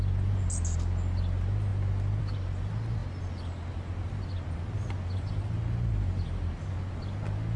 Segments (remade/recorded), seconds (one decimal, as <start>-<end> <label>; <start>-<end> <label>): 0.0-7.6 recorded